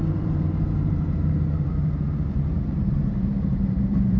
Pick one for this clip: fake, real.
fake